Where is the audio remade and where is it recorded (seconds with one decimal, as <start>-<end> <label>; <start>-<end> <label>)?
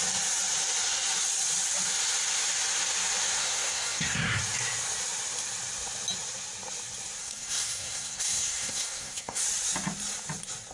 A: 0.0-3.4 recorded; 3.4-4.4 remade; 4.4-7.2 recorded; 7.2-9.4 remade; 9.4-10.7 recorded